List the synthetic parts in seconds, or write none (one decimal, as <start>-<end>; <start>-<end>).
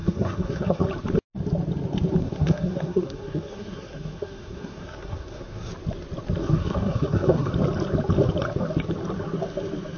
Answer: 0.0-0.8; 2.2-5.7; 6.4-7.5